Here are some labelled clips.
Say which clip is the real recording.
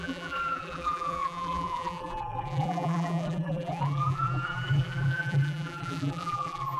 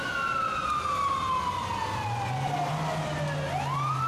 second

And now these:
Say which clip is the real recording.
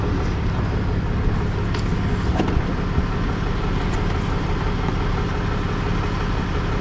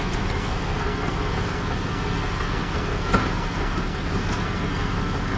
first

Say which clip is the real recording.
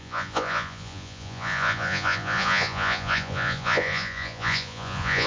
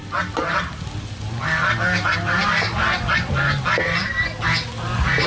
second